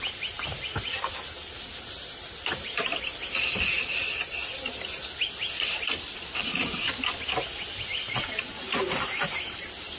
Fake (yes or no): no